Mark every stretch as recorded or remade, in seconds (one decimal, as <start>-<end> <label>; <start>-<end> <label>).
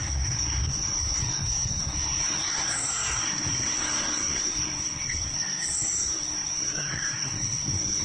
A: 0.0-8.0 remade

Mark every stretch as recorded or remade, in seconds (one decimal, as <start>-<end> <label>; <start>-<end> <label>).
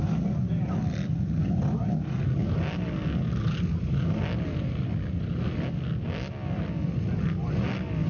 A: 0.0-8.1 recorded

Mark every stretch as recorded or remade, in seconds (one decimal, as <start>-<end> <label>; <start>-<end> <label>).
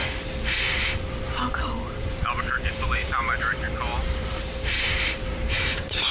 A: 0.0-1.5 recorded; 1.5-6.1 remade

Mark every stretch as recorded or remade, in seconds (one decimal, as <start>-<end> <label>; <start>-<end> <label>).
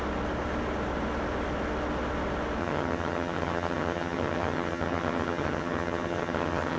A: 0.0-2.6 recorded; 2.6-6.8 remade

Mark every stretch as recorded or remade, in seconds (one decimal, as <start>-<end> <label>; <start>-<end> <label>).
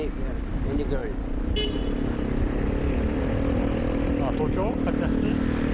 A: 0.0-5.7 recorded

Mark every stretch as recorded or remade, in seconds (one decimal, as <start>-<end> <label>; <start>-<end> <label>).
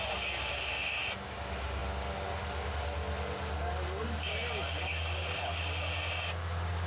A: 0.0-6.9 recorded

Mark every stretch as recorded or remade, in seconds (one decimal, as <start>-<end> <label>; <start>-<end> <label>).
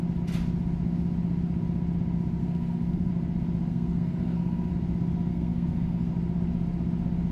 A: 0.0-2.4 recorded; 2.4-3.1 remade; 3.1-3.7 recorded; 3.7-4.7 remade; 4.7-5.3 recorded; 5.3-6.1 remade; 6.1-7.3 recorded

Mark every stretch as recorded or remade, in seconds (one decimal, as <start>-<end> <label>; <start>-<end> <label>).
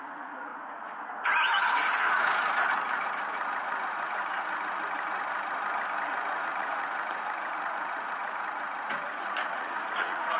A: 0.0-0.5 remade; 0.5-2.0 recorded; 2.0-5.2 remade; 5.2-6.3 recorded; 6.3-10.4 remade